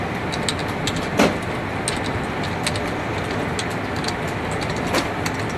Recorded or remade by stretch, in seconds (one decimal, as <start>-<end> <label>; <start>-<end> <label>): 0.0-0.6 recorded; 0.6-1.1 remade; 1.1-5.6 recorded